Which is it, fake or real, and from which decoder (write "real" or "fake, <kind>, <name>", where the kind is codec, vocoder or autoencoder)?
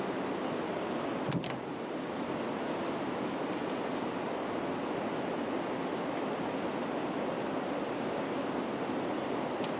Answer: real